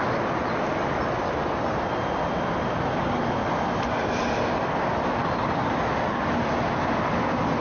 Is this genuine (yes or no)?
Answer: yes